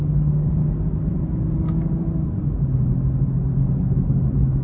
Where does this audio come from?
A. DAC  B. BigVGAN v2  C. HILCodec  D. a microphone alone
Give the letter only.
D